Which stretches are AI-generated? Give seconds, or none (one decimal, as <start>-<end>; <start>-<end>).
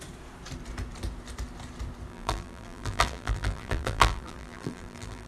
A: 2.1-5.3